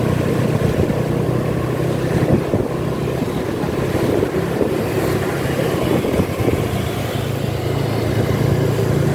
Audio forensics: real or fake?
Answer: real